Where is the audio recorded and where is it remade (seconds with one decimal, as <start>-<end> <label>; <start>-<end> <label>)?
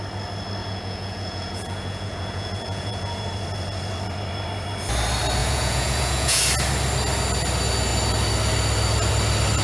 0.0-0.6 recorded; 0.6-3.2 remade; 3.2-5.4 recorded; 5.4-6.4 remade; 6.4-9.6 recorded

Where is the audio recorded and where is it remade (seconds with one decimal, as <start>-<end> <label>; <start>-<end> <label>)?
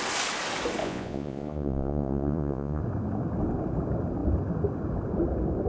0.0-0.8 recorded; 0.8-2.8 remade; 2.8-5.7 recorded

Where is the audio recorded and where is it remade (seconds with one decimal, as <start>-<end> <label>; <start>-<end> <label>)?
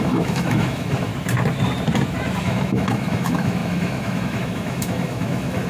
0.0-1.1 remade; 1.1-2.4 recorded; 2.4-5.7 remade